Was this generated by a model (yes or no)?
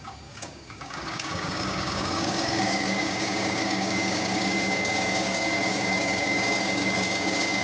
yes